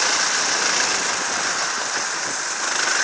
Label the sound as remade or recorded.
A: recorded